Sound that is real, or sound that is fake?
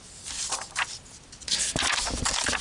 real